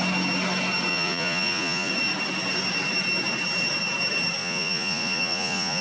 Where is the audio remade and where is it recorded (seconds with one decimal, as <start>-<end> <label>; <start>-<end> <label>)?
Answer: 0.0-0.9 recorded; 0.9-1.9 remade; 1.9-4.4 recorded; 4.4-5.8 remade